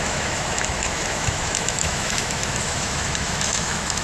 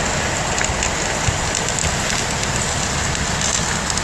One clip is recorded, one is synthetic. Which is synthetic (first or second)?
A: first